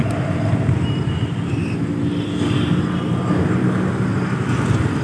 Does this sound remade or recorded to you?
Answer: recorded